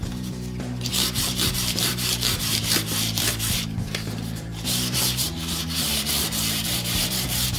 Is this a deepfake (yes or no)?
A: yes